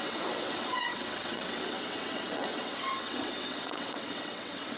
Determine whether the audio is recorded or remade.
remade